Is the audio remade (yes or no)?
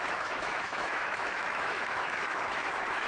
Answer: yes